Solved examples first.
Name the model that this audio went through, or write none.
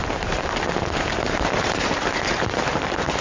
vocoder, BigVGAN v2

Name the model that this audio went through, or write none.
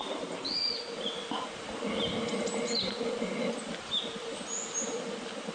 none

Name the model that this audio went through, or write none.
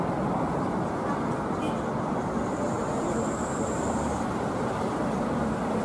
none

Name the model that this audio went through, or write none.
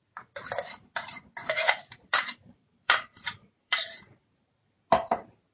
vocoder, BigVGAN v2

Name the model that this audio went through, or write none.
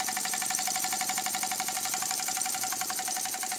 vocoder, BigVGAN v2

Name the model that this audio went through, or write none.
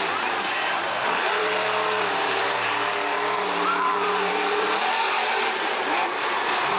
vocoder, BigVGAN v2